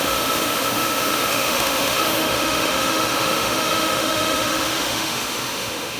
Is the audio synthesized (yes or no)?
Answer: yes